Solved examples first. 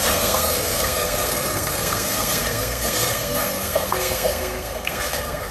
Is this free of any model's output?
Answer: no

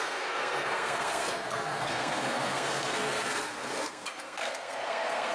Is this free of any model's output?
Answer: no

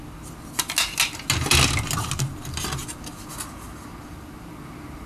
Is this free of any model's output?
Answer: yes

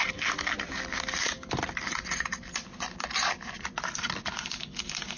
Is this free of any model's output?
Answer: yes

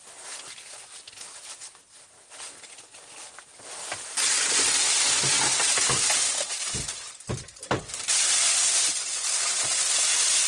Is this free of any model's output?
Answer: yes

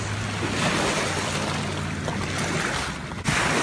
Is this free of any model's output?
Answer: yes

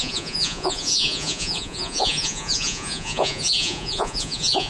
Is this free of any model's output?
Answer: no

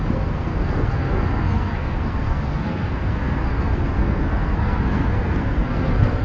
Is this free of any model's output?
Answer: no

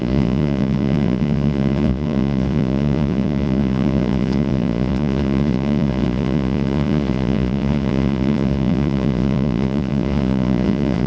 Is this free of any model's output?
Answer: no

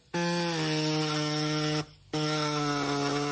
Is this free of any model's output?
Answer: yes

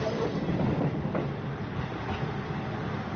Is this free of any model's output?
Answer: yes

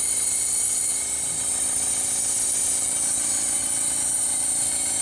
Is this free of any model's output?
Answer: yes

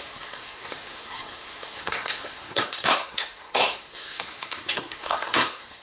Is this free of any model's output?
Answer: no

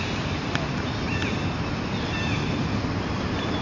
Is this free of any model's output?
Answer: yes